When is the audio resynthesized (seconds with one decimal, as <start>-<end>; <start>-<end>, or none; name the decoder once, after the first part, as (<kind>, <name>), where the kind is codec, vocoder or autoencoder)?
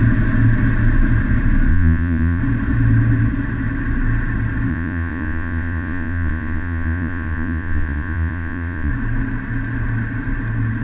1.7-2.4 (vocoder, Vocos); 4.7-8.9